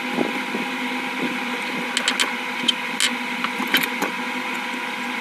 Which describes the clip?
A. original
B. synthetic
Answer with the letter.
A